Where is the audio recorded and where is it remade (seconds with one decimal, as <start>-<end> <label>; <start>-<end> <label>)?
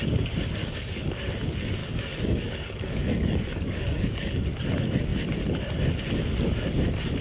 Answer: 0.0-0.6 recorded; 0.6-1.1 remade; 1.1-1.8 recorded; 1.8-4.6 remade; 4.6-7.2 recorded